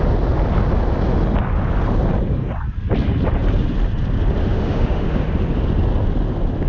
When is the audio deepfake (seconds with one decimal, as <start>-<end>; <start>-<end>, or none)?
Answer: 4.4-5.2